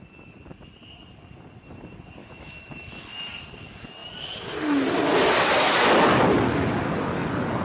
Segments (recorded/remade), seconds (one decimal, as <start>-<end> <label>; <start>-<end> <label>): 0.0-2.2 recorded; 2.2-3.3 remade; 3.3-7.6 recorded